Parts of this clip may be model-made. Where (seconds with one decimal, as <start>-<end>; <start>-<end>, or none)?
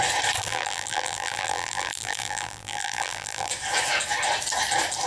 0.4-3.5